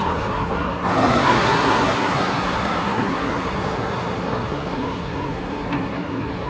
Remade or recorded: remade